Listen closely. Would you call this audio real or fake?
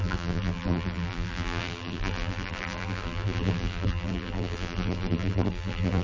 fake